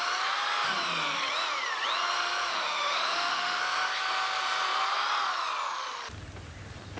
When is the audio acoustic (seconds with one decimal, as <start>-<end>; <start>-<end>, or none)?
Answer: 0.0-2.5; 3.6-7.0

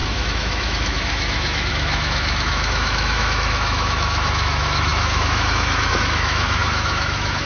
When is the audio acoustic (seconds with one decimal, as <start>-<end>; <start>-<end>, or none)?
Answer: none

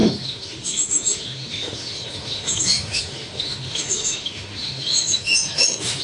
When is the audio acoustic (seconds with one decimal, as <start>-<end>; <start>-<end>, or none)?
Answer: none